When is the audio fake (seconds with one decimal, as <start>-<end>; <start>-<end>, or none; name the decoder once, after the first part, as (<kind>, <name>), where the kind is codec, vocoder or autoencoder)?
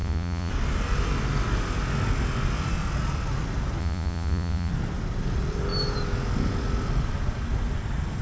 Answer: 0.0-0.5 (vocoder, Vocos); 3.8-4.7